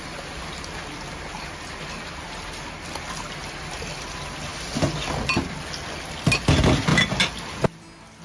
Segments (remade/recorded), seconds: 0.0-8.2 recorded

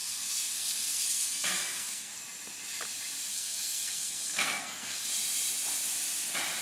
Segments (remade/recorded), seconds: 0.0-2.2 remade; 2.2-3.3 recorded; 3.3-5.1 remade; 5.1-6.6 recorded

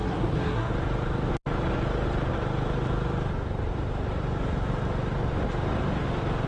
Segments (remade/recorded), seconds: 0.0-0.7 remade; 0.7-6.5 recorded

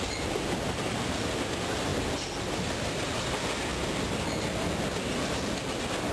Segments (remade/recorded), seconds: 0.0-6.1 recorded